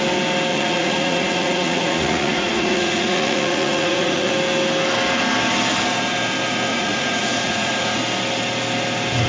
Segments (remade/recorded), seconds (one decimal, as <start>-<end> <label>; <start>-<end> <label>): 0.0-0.5 recorded; 0.5-4.3 remade; 4.3-6.7 recorded; 6.7-8.0 remade; 8.0-9.3 recorded